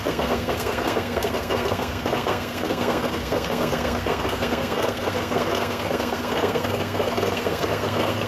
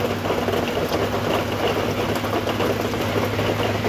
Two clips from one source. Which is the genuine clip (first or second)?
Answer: second